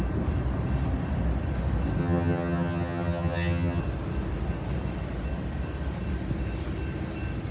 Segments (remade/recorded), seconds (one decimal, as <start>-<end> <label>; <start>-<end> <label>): 0.0-2.0 recorded; 2.0-3.8 remade; 3.8-7.5 recorded